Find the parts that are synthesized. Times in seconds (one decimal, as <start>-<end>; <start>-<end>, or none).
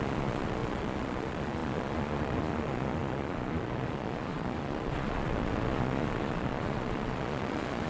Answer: 0.0-7.9